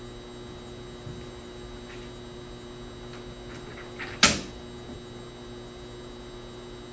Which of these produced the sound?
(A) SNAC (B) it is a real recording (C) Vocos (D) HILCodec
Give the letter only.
B